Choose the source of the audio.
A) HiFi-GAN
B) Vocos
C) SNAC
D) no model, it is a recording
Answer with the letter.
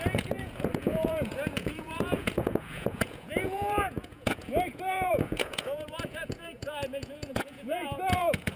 B